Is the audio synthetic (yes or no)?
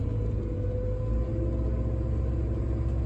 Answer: no